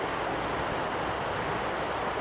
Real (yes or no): yes